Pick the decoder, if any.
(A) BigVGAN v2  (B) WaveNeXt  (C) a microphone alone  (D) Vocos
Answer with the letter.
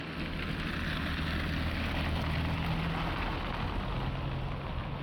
C